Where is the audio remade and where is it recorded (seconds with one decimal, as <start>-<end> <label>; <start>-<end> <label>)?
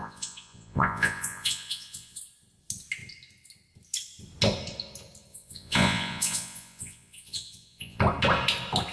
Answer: 0.0-2.2 remade; 2.2-5.3 recorded; 5.3-8.0 remade; 8.0-8.9 recorded